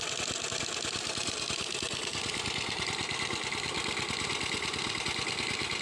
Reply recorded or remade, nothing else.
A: recorded